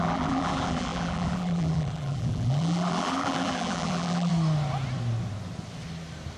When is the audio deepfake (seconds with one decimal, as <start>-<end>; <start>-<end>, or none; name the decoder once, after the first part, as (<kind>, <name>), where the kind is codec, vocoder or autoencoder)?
0.0-4.3 (vocoder, BigVGAN v2)